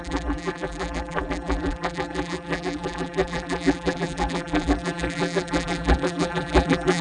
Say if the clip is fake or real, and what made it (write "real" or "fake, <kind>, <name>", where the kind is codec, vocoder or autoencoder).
fake, vocoder, BigVGAN v2